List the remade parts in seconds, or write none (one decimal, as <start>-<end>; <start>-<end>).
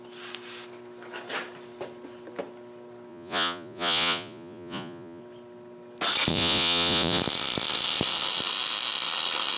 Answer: 3.1-5.2; 6.3-7.2